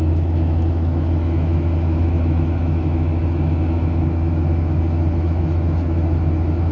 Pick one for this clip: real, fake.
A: fake